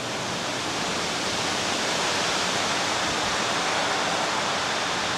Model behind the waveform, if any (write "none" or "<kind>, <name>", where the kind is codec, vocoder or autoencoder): none